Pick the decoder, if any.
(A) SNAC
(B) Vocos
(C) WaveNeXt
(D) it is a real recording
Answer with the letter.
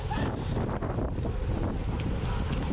D